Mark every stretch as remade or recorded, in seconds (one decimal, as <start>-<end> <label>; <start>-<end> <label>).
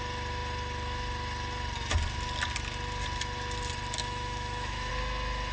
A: 0.0-4.0 recorded; 4.0-4.9 remade; 4.9-5.5 recorded